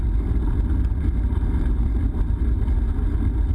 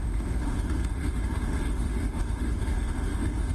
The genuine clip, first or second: first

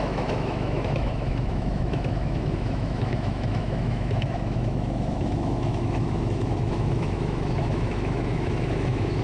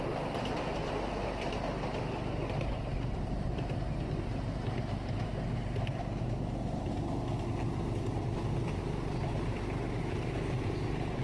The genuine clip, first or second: second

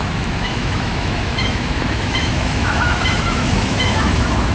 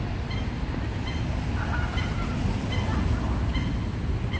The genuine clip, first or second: second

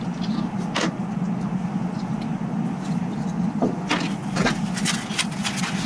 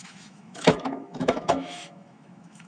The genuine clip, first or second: first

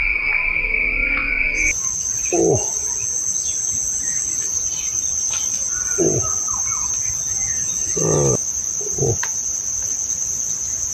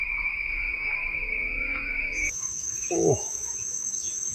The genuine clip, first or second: first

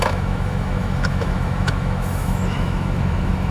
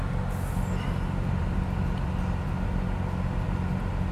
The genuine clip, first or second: second